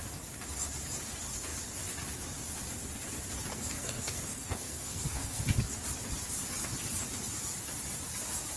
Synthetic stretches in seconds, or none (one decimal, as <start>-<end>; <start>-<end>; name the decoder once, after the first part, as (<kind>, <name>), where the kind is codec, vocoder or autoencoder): 3.5-5.4 (codec, SNAC)